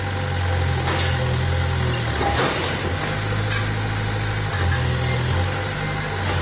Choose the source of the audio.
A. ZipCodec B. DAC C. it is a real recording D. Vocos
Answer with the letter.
C